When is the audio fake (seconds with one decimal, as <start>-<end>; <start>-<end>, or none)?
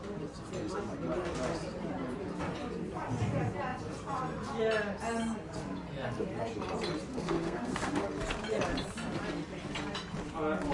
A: 7.1-8.0